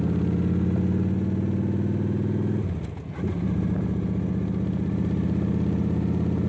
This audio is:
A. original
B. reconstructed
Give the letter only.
A